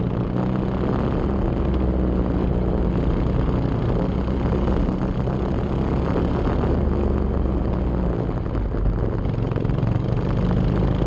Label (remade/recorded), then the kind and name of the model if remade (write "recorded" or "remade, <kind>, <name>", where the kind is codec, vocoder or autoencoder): recorded